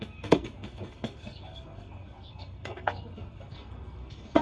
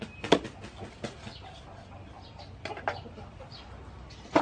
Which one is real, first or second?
second